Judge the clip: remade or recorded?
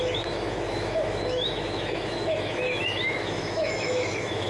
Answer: remade